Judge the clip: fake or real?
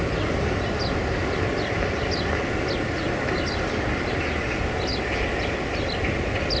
real